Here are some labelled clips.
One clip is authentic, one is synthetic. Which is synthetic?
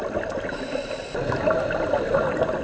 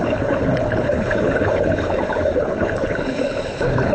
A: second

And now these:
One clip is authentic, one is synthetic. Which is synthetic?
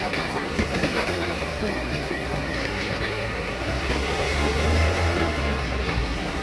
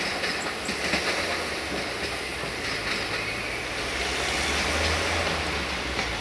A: first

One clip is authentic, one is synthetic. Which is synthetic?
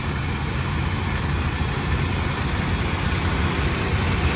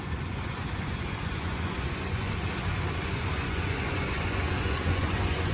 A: second